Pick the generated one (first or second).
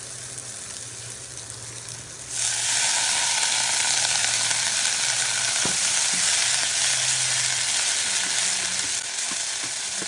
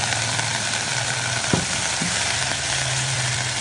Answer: second